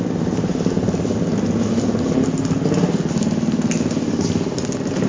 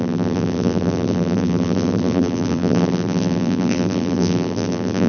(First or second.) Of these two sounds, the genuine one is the first